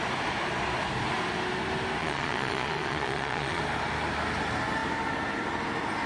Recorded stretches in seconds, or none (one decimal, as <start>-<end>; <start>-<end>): 0.0-2.0; 3.6-6.1